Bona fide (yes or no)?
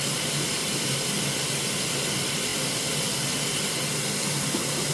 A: yes